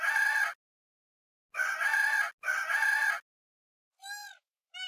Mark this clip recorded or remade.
recorded